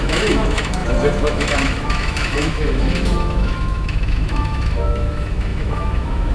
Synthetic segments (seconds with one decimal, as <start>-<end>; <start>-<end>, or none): 0.0-6.3